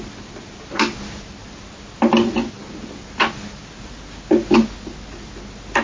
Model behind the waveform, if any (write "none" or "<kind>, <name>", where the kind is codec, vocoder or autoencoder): none